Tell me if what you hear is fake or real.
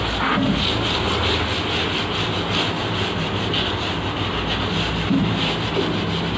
real